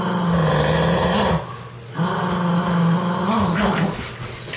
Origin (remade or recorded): recorded